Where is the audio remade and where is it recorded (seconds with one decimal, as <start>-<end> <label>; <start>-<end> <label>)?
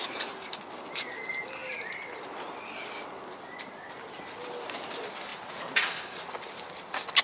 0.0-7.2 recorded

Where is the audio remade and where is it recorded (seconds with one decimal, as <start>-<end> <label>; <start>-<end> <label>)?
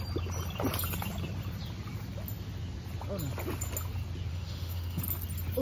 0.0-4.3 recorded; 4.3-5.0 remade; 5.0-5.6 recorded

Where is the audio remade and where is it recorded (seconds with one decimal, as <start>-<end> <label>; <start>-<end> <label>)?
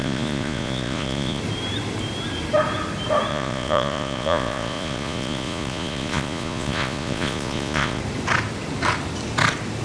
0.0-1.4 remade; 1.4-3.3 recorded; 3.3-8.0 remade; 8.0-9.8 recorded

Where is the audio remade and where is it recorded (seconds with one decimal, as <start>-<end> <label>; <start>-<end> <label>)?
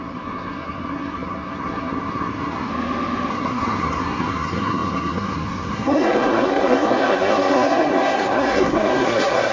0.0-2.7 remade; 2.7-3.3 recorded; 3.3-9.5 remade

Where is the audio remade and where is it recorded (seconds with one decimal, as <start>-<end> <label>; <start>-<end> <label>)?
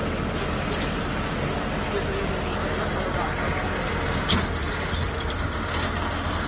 0.0-6.5 recorded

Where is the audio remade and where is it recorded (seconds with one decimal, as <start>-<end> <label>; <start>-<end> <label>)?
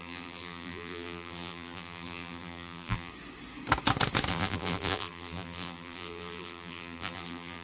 0.0-3.1 remade; 3.1-4.3 recorded; 4.3-7.6 remade